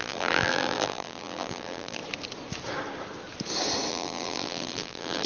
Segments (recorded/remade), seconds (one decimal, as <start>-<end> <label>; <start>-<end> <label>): 0.0-2.0 remade; 2.0-3.9 recorded; 3.9-5.3 remade